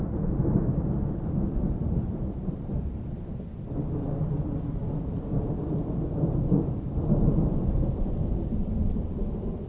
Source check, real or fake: fake